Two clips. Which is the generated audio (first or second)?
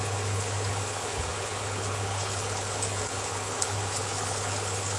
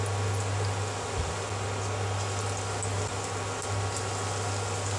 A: first